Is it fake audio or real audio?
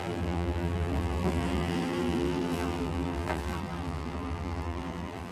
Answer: fake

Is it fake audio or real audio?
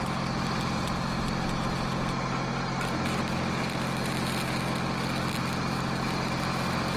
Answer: real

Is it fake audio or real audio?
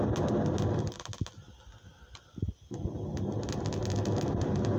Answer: real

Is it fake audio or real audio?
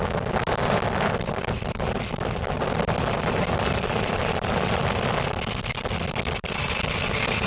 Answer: fake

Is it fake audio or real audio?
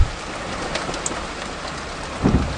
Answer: real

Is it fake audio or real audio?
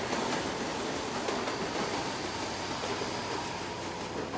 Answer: real